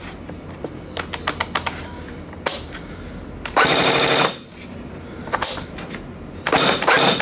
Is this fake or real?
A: real